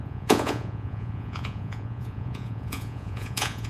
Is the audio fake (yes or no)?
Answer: yes